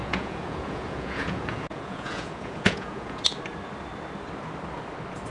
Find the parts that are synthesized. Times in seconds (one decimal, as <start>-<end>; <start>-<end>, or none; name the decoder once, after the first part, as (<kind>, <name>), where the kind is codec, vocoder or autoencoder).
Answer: 0.0-3.2 (vocoder, Vocos)